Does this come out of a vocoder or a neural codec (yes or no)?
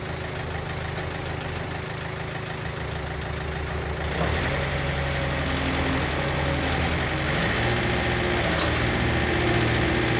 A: no